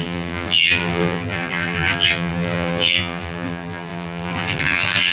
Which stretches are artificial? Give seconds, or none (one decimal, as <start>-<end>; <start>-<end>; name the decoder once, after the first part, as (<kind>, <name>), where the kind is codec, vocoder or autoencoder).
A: 0.0-5.1 (vocoder, BigVGAN v2)

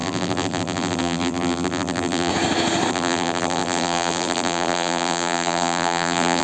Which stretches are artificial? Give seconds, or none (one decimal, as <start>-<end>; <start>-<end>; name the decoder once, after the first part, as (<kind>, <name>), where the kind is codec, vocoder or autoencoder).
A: 0.0-2.3 (vocoder, BigVGAN v2); 2.9-6.4

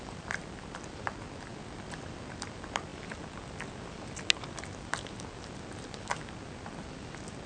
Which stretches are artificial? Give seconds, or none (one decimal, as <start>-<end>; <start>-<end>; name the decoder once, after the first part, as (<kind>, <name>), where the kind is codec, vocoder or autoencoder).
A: 0.0-2.9 (vocoder, BigVGAN v2); 6.3-7.5

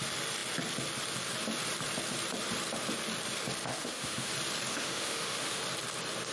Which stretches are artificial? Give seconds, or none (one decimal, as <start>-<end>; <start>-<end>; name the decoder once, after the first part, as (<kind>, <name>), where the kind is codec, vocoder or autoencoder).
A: 3.7-4.3 (autoencoder, DAC-VAE); 4.7-5.6

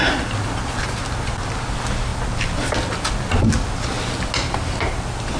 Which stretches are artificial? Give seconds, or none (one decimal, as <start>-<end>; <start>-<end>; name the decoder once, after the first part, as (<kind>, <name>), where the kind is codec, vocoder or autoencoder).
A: none

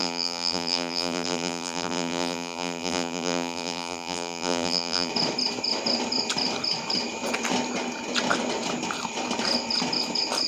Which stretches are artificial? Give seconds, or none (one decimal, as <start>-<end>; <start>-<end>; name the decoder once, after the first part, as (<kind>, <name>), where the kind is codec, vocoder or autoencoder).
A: 0.0-5.1 (vocoder, BigVGAN v2)

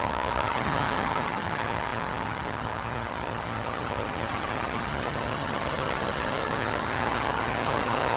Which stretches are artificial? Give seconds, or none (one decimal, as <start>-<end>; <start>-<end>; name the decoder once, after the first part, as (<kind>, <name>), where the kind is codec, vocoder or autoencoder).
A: 0.0-8.2 (vocoder, HiFi-GAN)